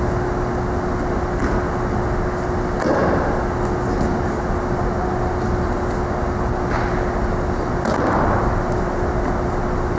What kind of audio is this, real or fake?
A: real